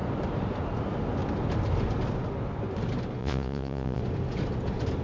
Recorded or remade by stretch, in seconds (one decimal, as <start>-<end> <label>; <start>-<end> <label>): 0.0-3.2 recorded; 3.2-4.0 remade; 4.0-5.0 recorded